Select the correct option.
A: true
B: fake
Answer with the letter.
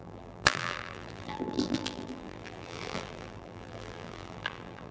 B